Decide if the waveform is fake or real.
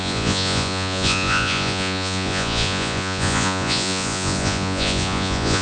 fake